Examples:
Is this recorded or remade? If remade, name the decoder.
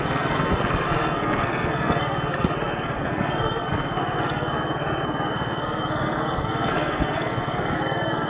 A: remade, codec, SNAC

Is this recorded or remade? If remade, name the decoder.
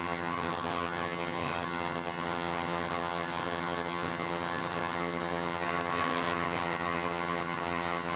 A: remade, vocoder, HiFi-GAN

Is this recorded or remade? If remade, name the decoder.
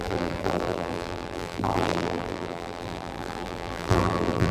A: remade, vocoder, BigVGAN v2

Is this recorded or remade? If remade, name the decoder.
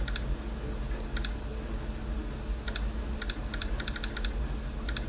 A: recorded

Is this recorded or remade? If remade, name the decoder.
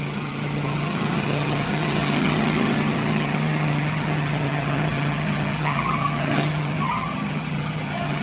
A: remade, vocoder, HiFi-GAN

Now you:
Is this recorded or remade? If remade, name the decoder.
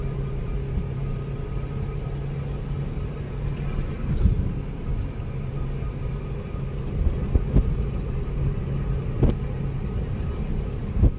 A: recorded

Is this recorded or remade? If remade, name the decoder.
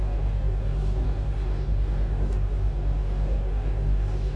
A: remade, codec, DAC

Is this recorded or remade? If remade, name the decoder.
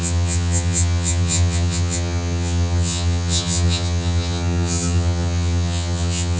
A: remade, vocoder, HiFi-GAN